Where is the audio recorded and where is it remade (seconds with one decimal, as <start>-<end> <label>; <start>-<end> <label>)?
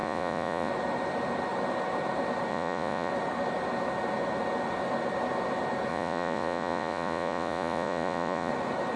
0.0-0.7 remade; 0.7-2.5 recorded; 2.5-3.1 remade; 3.1-5.9 recorded; 5.9-8.5 remade; 8.5-9.0 recorded